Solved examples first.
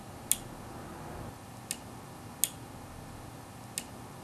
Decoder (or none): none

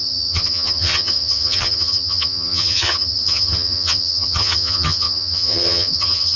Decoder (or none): vocoder, HiFi-GAN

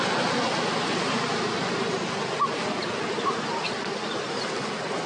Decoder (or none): none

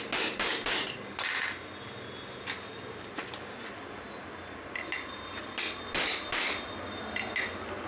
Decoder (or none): none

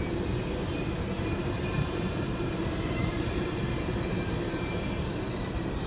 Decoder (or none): vocoder, BigVGAN v2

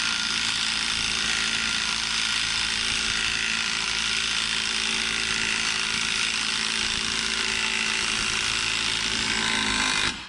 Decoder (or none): none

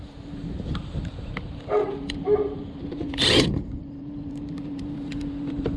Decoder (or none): vocoder, BigVGAN v2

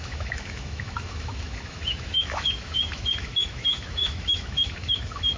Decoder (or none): autoencoder, DAC-VAE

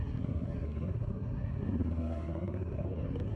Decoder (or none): codec, SNAC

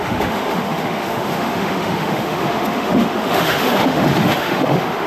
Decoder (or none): autoencoder, DAC-VAE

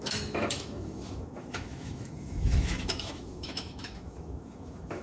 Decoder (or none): autoencoder, DAC-VAE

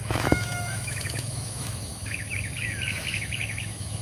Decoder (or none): autoencoder, DAC-VAE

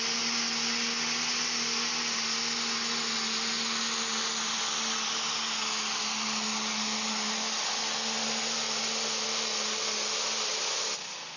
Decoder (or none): none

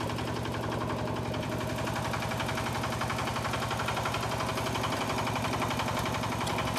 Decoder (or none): none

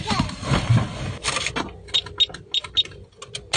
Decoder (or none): none